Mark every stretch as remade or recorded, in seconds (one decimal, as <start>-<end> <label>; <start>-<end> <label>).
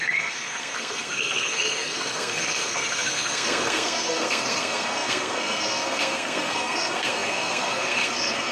0.0-8.5 remade